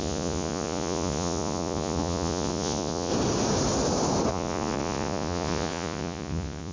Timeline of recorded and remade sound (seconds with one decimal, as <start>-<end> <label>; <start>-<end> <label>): 0.0-3.1 remade; 3.1-4.3 recorded; 4.3-6.7 remade